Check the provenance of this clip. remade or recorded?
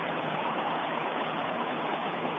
remade